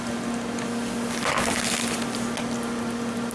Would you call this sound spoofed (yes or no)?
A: no